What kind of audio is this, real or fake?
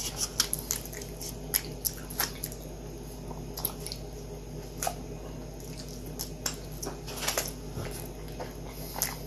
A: real